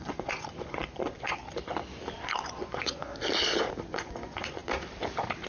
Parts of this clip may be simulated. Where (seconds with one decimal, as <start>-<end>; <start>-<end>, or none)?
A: 0.0-1.4; 2.2-3.1; 3.8-4.6